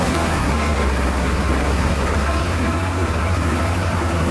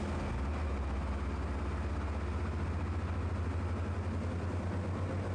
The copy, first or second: first